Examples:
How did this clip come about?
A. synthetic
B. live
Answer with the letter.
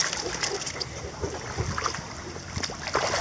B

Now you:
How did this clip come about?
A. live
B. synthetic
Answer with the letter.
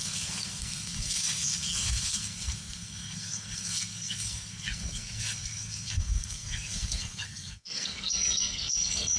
B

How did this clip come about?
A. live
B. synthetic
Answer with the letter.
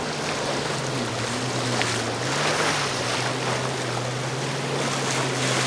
A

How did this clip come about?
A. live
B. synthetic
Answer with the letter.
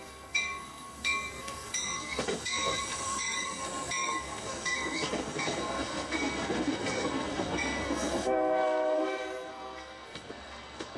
B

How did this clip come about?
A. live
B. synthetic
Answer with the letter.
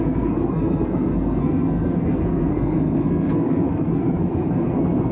B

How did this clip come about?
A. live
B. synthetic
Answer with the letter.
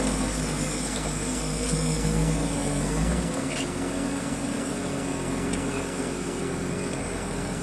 B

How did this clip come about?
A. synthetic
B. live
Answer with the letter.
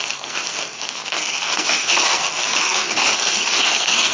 A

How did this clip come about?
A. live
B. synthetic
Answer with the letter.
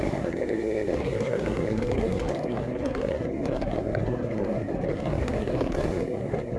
B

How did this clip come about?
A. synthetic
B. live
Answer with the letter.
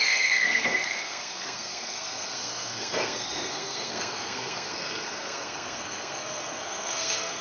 A